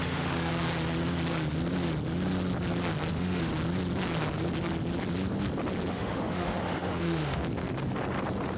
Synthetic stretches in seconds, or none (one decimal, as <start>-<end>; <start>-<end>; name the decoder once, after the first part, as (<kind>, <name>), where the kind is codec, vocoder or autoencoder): 0.0-0.5 (autoencoder, DAC-VAE); 3.1-3.5; 5.9-7.4